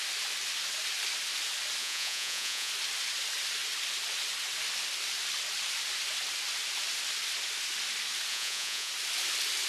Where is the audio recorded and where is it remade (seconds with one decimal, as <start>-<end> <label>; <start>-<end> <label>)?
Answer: 0.0-1.8 recorded; 1.8-2.7 remade; 2.7-8.3 recorded; 8.3-8.9 remade; 8.9-9.7 recorded